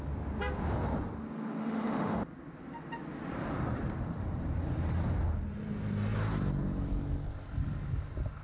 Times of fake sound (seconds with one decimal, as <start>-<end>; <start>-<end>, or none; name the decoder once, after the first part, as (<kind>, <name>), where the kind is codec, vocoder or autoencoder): 1.6-2.2 (autoencoder, DAC-VAE)